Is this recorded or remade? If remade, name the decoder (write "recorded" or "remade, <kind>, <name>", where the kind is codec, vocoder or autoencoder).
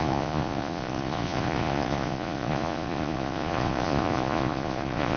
remade, vocoder, Vocos